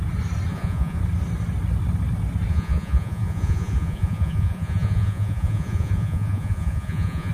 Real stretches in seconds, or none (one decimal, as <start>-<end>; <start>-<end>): 0.0-0.5; 1.0-2.5